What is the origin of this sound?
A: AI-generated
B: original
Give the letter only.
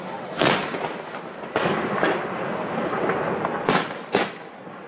B